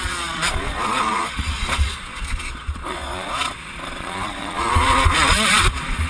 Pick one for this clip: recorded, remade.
remade